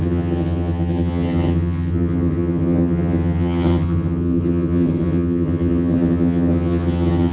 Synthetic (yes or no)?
yes